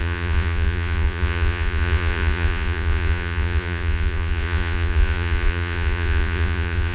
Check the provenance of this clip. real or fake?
fake